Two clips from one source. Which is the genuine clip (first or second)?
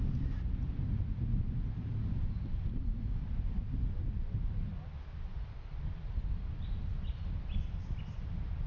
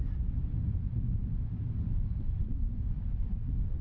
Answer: first